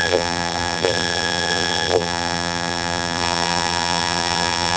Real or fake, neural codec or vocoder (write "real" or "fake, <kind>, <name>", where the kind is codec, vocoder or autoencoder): fake, vocoder, BigVGAN v2